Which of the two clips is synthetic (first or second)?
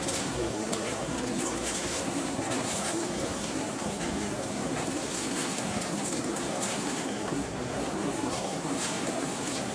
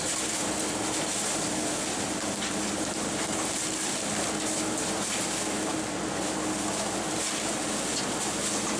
first